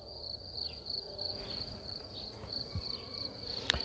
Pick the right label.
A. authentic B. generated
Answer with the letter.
B